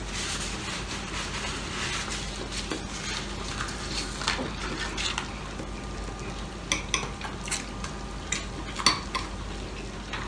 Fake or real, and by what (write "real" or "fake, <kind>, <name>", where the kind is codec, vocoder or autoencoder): real